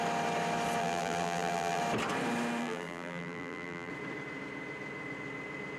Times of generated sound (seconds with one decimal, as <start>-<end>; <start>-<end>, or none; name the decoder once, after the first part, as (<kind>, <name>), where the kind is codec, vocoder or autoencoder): 0.8-1.8 (vocoder, BigVGAN v2); 2.6-3.9